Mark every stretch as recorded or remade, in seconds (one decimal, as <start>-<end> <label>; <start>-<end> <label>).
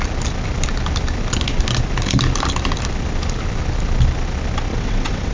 0.0-4.7 recorded; 4.7-5.3 remade